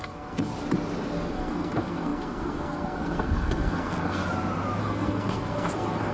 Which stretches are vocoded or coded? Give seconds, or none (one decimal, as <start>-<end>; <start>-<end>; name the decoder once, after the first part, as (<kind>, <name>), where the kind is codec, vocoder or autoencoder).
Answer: 0.0-0.5 (codec, SNAC); 1.3-4.2; 4.8-6.1